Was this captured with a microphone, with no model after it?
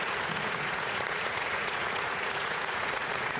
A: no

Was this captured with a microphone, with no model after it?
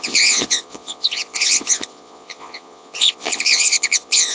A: no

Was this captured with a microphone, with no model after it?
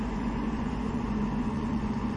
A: no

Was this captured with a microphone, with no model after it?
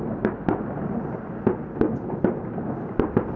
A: yes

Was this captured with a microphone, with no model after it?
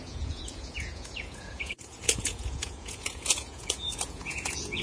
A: no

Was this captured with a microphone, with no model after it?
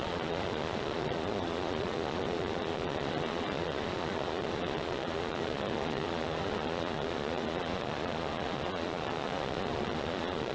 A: no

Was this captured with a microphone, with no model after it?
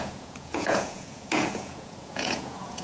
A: no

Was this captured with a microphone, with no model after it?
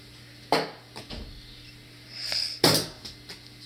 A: yes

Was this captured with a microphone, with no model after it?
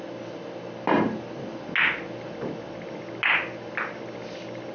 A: yes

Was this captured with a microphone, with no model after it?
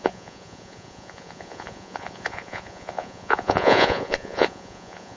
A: no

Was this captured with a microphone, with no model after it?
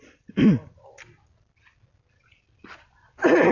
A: yes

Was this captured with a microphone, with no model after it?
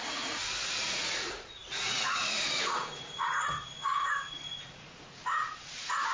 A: no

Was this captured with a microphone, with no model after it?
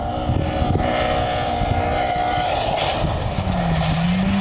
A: yes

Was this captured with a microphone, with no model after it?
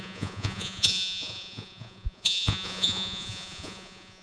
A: no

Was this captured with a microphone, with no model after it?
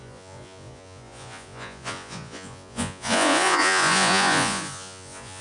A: no